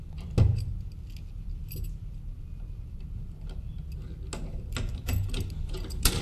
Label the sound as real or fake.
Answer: real